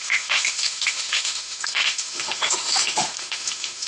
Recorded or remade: remade